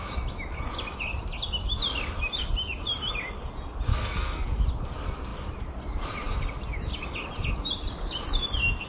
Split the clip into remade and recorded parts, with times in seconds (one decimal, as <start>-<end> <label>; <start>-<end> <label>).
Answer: 0.0-3.9 recorded; 3.9-4.6 remade; 4.6-8.9 recorded